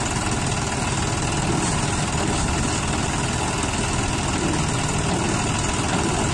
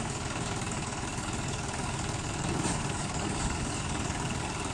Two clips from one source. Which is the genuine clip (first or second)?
first